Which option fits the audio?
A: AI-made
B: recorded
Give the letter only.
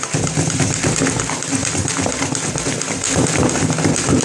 B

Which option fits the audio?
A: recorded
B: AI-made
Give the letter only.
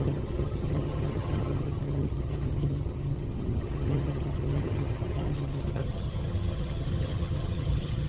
B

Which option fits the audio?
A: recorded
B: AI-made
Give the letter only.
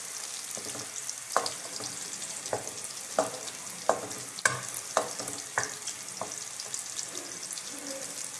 A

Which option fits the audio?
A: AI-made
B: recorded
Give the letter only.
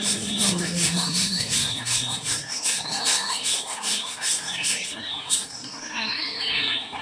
A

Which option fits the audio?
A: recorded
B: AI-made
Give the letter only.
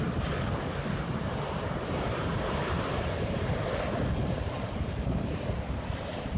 B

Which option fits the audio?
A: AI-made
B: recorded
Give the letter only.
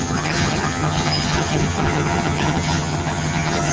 A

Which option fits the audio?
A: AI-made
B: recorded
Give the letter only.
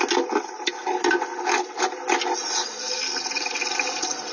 B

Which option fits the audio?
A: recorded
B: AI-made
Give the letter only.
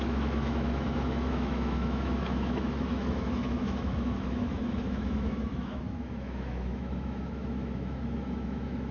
B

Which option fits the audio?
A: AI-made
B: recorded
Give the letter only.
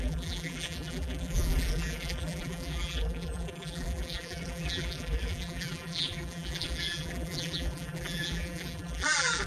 A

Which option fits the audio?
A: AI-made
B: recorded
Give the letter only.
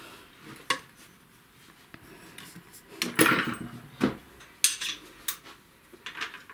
B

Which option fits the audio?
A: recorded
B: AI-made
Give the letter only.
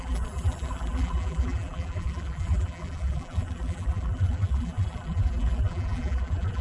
B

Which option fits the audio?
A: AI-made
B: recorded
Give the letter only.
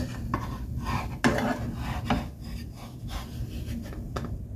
B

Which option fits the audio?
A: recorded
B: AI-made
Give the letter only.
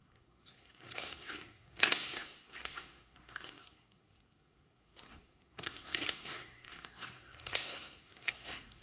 B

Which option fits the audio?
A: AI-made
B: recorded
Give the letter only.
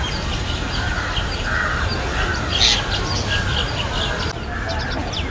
B